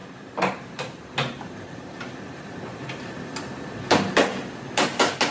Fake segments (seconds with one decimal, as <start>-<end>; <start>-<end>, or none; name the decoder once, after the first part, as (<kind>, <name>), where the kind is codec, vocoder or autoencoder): 0.0-3.2 (vocoder, BigVGAN v2)